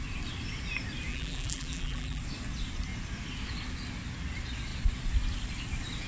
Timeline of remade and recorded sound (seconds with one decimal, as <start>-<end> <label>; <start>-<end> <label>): 0.0-1.1 recorded; 1.1-2.2 remade; 2.2-6.1 recorded